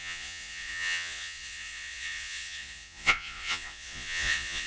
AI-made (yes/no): yes